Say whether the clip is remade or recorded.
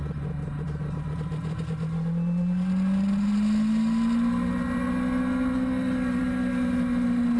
recorded